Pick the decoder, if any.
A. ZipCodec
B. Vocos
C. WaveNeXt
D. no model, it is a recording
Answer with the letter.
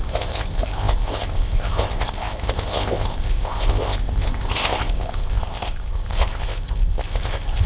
A